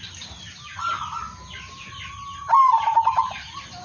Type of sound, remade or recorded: recorded